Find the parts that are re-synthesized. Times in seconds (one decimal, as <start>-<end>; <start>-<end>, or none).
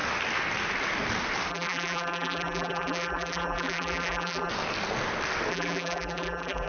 1.5-4.5; 5.5-6.7